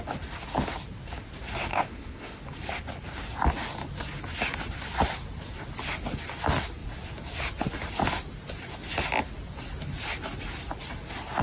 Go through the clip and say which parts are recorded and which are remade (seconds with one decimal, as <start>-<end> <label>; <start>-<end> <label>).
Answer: 0.0-1.7 recorded; 1.7-2.4 remade; 2.4-11.4 recorded